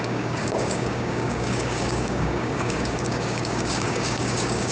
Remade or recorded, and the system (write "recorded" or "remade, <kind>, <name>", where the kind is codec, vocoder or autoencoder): remade, codec, DAC